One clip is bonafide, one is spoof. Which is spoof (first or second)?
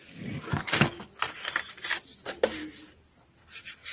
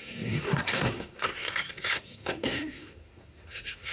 second